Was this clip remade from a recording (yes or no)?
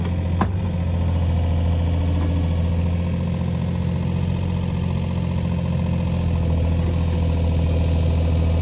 no